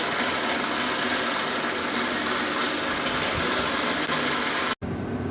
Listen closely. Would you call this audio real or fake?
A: real